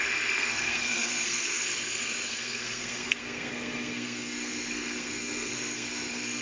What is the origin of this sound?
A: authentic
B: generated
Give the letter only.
B